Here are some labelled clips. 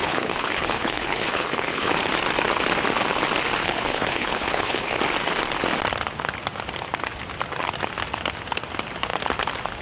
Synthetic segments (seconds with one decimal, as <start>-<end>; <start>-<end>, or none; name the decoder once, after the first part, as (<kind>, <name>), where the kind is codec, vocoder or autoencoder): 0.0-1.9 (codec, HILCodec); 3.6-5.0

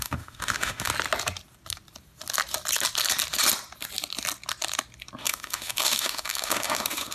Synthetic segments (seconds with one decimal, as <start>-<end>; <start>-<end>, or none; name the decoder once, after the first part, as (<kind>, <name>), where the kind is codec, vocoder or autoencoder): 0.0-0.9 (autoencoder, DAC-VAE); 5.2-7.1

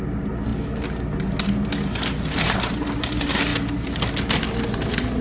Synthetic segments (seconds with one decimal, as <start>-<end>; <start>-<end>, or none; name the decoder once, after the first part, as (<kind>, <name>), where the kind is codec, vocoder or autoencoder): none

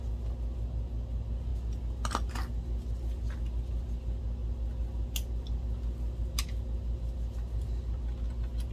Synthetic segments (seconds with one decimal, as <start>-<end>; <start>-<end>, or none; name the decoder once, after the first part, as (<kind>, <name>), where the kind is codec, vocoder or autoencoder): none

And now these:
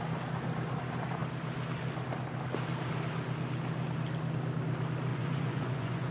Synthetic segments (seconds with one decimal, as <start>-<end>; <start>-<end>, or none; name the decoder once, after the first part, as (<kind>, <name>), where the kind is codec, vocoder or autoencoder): 5.1-6.1 (vocoder, Vocos)

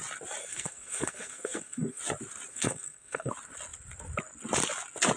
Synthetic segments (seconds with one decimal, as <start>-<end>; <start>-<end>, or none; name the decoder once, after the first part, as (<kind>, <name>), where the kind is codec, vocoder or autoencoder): 0.4-2.0 (codec, SNAC); 2.5-3.3

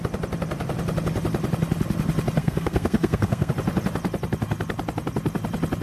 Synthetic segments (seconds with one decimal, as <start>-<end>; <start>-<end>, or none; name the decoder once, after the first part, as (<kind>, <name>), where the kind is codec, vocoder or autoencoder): 2.4-3.5 (codec, SNAC)

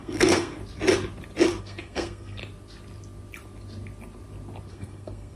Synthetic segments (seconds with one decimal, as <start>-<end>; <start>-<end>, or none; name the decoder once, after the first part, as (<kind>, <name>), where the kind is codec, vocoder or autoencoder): 0.0-0.6 (codec, SNAC); 1.6-2.4; 4.7-5.4